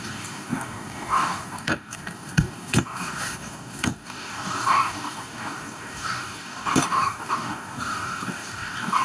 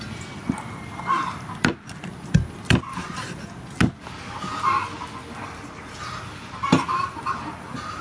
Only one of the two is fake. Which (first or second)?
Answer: first